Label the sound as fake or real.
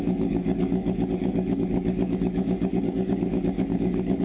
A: fake